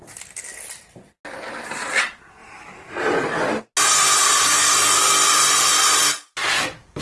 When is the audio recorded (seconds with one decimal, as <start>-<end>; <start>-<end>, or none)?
0.0-7.0